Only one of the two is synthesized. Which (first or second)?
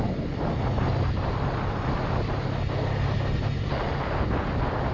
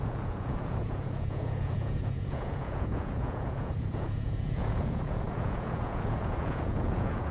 second